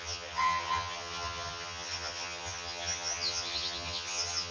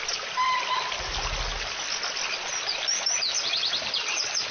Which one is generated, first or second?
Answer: first